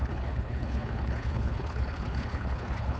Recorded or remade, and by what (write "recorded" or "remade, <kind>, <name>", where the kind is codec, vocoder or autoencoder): remade, codec, HILCodec